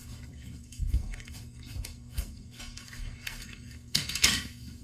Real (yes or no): no